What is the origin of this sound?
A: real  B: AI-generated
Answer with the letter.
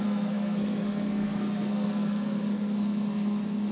B